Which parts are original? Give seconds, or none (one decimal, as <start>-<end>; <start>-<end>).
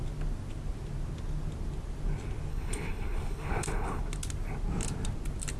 0.0-2.5; 4.0-5.6